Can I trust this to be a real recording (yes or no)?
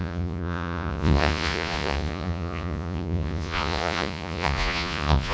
no